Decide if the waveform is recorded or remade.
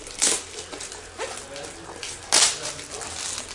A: recorded